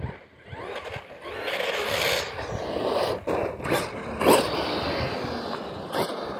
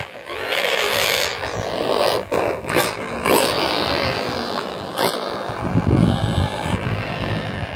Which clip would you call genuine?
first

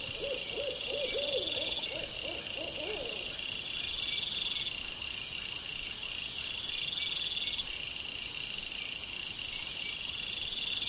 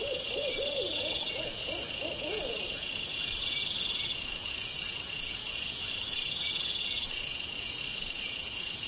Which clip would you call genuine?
first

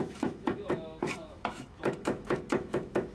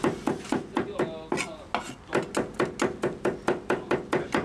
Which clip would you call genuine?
second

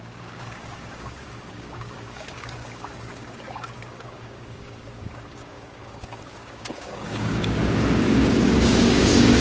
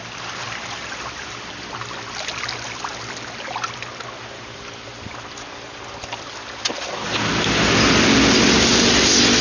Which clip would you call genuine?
second